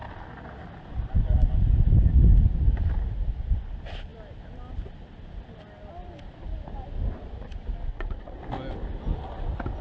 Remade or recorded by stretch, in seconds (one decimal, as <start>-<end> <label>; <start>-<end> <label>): 0.0-7.9 recorded; 7.9-8.4 remade; 8.4-9.8 recorded